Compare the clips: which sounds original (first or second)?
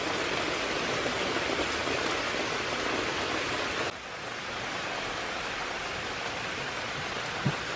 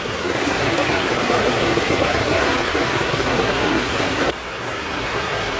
first